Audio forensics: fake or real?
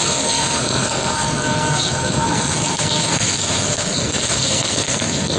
fake